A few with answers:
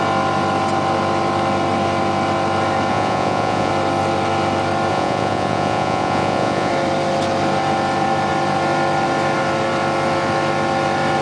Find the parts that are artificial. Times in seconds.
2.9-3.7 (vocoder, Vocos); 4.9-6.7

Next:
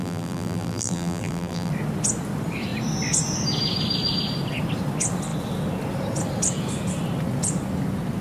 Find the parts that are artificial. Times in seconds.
0.0-1.7 (vocoder, BigVGAN v2)

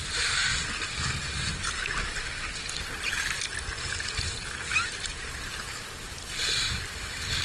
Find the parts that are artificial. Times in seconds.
1.2-2.4 (vocoder, BigVGAN v2); 4.7-5.4; 6.3-7.0

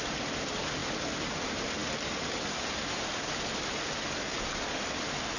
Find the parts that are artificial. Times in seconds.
none

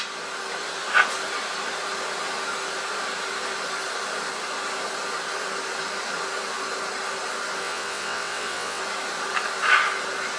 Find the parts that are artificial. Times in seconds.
7.6-8.8 (vocoder, WaveNeXt)

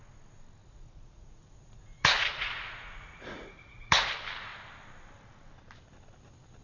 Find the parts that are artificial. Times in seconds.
0.6-4.1 (vocoder, Vocos)

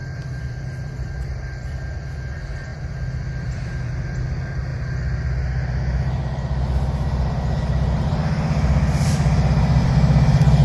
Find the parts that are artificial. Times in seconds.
0.0-4.7 (vocoder, BigVGAN v2); 9.8-10.6

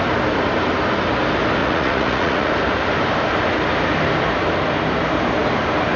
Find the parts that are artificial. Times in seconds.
1.6-2.5 (vocoder, Vocos)